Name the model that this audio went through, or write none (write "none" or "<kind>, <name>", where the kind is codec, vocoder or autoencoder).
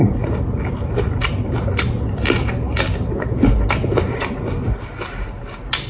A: none